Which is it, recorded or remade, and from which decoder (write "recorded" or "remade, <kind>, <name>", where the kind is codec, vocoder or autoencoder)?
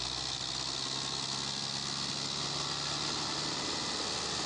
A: recorded